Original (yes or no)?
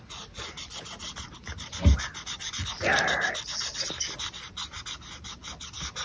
yes